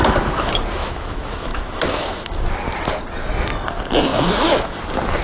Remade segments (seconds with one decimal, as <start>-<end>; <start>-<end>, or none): 0.8-2.4; 4.1-4.8